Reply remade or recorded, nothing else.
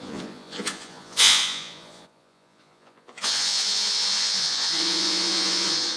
remade